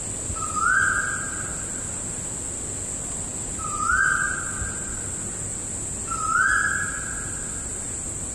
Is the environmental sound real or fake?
real